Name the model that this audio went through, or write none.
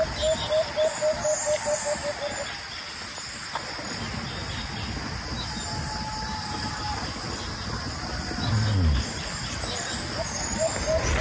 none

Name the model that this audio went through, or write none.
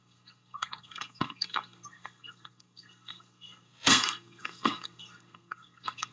codec, SNAC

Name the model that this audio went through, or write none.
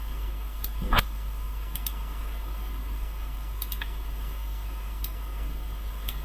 codec, SNAC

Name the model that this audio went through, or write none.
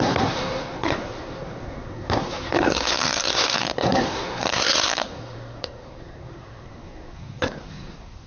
codec, SNAC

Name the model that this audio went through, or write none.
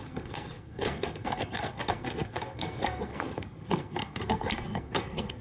codec, SNAC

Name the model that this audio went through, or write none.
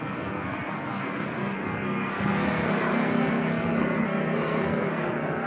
codec, SNAC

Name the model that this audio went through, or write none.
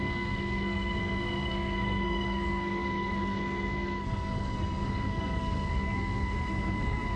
codec, SNAC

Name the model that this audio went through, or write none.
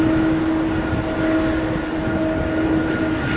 none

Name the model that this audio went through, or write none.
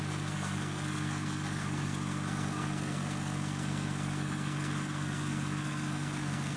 codec, SNAC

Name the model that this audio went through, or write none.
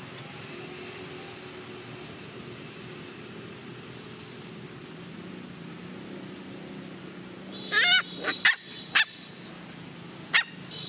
none